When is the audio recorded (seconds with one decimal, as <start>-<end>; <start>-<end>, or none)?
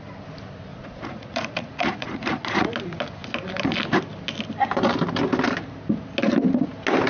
0.0-0.7; 2.7-7.1